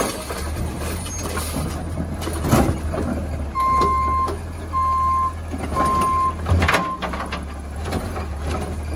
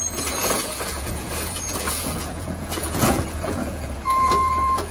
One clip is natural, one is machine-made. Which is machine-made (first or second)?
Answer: second